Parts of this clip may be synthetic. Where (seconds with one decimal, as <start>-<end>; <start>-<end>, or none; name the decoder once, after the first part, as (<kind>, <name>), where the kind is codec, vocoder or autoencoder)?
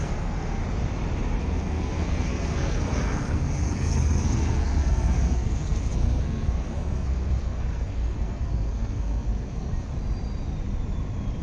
0.0-0.6 (codec, SNAC); 1.4-9.9